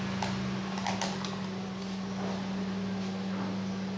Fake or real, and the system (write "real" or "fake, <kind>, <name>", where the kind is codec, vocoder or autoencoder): real